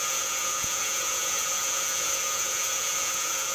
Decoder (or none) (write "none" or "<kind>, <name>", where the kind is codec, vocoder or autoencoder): vocoder, Vocos